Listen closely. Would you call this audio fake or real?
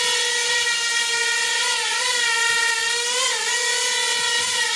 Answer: real